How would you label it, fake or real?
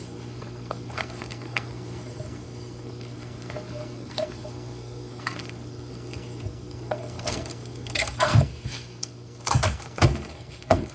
fake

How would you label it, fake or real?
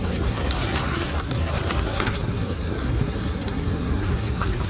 fake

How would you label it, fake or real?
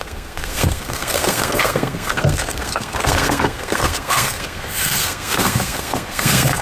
fake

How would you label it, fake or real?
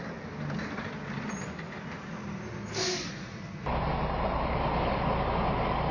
real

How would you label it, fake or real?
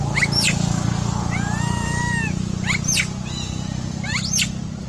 real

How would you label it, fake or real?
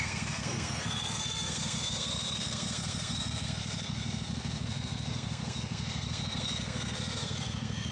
fake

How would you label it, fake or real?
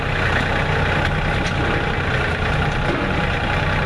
real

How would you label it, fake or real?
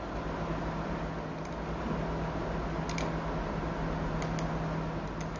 real